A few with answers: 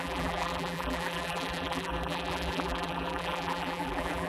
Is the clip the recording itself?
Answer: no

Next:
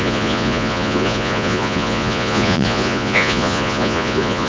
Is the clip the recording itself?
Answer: no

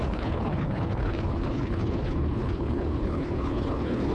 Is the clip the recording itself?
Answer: no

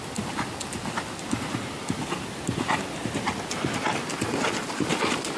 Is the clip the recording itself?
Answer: yes